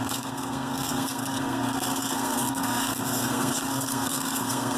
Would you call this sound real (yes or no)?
no